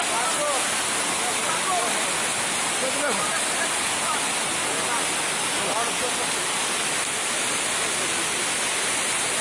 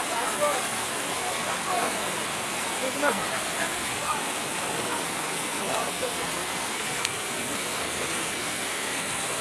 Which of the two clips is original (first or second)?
first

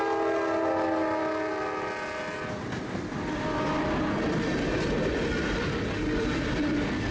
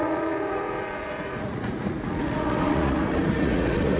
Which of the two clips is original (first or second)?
first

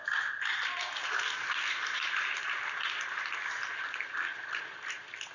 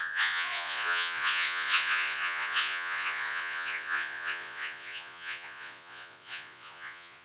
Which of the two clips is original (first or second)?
first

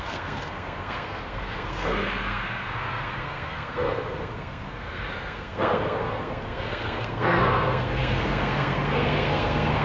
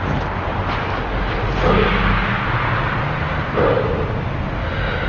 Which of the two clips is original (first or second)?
second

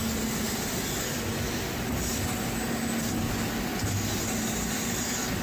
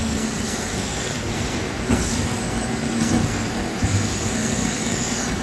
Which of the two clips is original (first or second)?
first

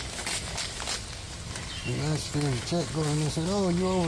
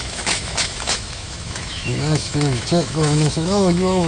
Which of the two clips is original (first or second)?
first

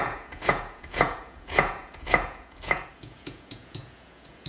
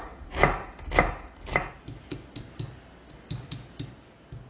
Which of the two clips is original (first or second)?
second